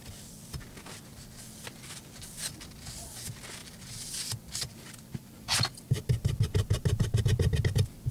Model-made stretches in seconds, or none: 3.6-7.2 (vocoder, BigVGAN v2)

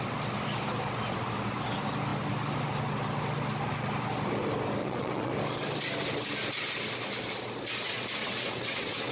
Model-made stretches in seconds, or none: 4.8-5.3 (vocoder, WaveNeXt); 8.2-9.1

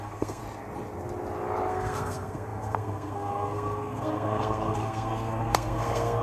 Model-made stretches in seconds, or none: 0.0-0.4 (codec, SNAC); 1.7-6.2

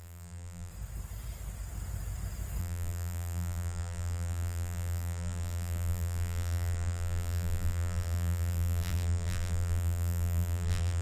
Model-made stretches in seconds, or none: 0.0-0.7 (vocoder, BigVGAN v2); 2.6-11.0

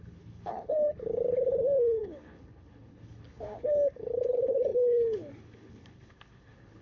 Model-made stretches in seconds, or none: 0.0-6.8 (codec, HILCodec)